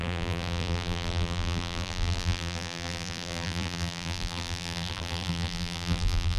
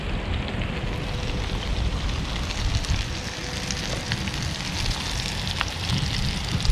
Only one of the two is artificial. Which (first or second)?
first